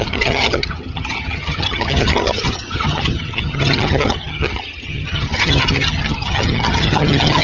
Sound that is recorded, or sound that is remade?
remade